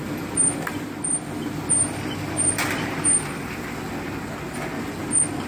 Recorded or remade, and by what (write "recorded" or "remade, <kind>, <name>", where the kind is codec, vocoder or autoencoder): recorded